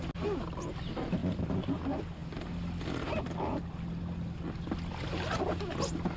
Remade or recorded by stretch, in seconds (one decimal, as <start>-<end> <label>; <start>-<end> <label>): 0.0-6.2 recorded